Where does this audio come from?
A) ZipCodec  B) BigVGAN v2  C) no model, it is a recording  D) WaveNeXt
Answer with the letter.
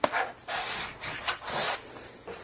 C